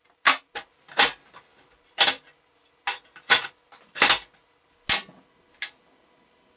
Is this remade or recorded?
recorded